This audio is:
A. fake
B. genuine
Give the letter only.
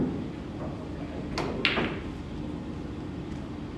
B